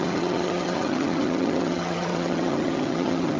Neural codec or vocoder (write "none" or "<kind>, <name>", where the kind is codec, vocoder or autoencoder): vocoder, HiFi-GAN